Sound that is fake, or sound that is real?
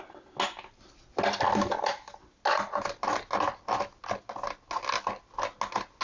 real